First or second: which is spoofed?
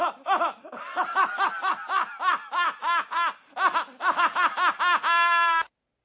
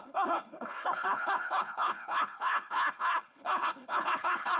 second